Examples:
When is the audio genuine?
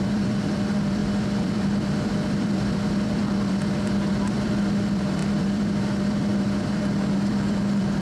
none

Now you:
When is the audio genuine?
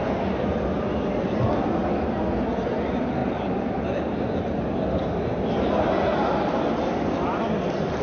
0.0-3.2; 4.0-8.0